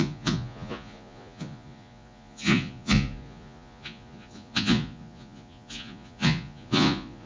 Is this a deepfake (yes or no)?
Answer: yes